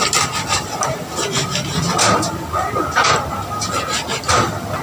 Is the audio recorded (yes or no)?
yes